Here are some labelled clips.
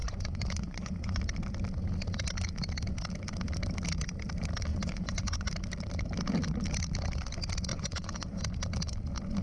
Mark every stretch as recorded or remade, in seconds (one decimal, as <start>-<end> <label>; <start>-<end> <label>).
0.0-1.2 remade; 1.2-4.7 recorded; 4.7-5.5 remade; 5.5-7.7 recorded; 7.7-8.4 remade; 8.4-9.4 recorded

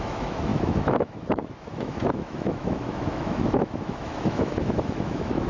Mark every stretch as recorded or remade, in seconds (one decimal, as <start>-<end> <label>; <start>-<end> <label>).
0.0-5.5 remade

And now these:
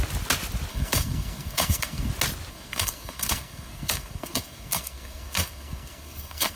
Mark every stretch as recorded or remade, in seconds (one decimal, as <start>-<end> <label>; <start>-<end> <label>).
0.0-0.7 recorded; 0.7-2.1 remade; 2.1-2.5 recorded; 2.5-6.6 remade